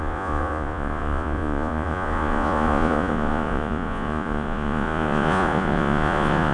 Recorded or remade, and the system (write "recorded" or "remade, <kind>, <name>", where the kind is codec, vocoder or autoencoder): remade, vocoder, Vocos